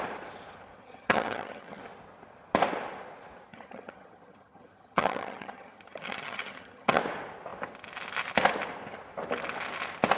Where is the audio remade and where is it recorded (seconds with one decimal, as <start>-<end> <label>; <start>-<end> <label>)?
0.0-0.8 recorded; 0.8-1.8 remade; 1.8-3.5 recorded; 3.5-7.0 remade; 7.0-10.2 recorded